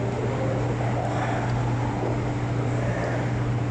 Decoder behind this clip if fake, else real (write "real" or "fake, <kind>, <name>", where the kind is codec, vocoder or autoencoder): real